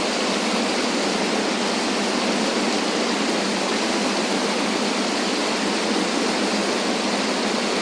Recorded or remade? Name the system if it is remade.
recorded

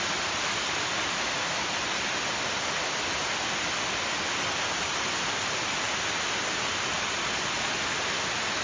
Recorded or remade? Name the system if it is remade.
recorded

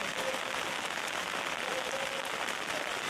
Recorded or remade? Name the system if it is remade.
recorded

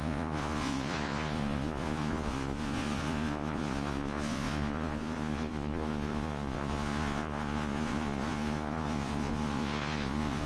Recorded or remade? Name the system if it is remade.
remade, vocoder, Vocos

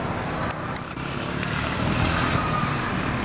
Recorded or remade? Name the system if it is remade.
recorded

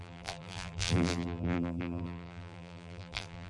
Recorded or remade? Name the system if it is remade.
remade, vocoder, BigVGAN v2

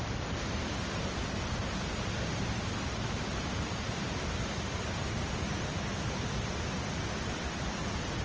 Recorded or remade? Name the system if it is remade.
recorded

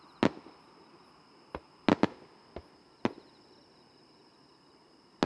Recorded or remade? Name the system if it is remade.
recorded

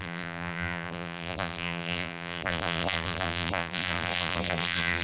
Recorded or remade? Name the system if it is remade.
remade, vocoder, BigVGAN v2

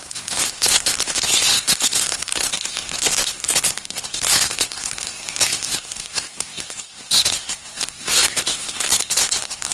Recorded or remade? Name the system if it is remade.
remade, codec, SNAC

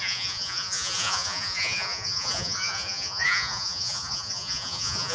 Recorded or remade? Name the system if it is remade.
remade, vocoder, Vocos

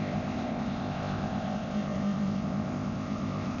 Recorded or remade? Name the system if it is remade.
remade, codec, ZipCodec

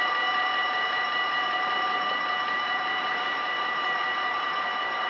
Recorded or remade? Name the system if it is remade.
remade, vocoder, BigVGAN v2